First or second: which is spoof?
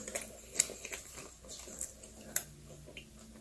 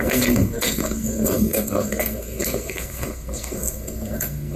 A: second